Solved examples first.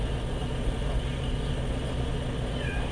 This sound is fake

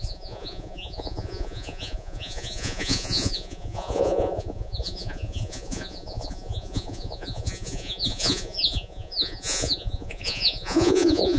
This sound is fake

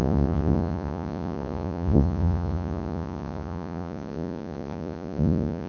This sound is fake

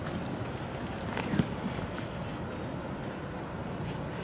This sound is real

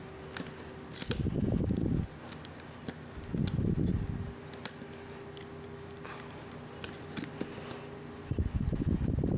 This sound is real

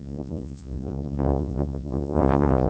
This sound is fake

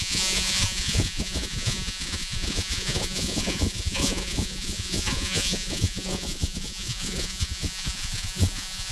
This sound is fake